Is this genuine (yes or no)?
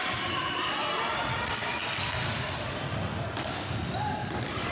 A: yes